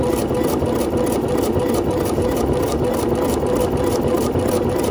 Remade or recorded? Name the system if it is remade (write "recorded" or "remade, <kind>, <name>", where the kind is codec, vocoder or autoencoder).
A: recorded